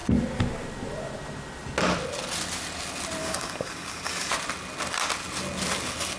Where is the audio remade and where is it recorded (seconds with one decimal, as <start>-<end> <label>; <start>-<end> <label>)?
0.0-3.2 recorded; 3.2-4.3 remade; 4.3-6.2 recorded